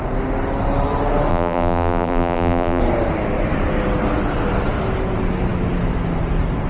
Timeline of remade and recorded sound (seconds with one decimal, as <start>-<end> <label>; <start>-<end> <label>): 0.0-1.3 recorded; 1.3-2.8 remade; 2.8-6.7 recorded